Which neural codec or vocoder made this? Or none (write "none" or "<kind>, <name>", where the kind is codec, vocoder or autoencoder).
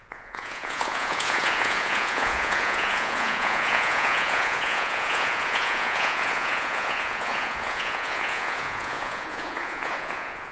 vocoder, Vocos